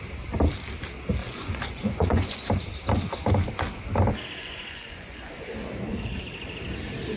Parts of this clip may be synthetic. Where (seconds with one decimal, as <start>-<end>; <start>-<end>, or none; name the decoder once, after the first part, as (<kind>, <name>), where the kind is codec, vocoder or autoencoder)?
1.2-2.5 (vocoder, Vocos); 4.4-5.5